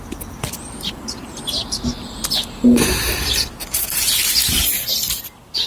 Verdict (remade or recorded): recorded